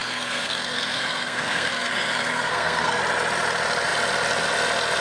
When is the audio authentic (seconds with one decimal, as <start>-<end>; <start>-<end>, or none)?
3.0-5.0